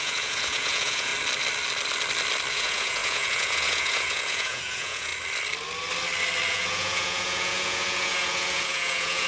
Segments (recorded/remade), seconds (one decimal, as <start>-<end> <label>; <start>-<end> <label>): 0.0-1.1 remade; 1.1-2.5 recorded; 2.5-5.1 remade; 5.1-6.5 recorded; 6.5-9.3 remade